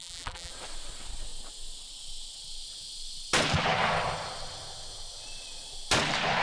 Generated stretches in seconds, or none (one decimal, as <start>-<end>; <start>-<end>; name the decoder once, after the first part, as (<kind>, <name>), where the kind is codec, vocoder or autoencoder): 0.0-0.5 (vocoder, BigVGAN v2)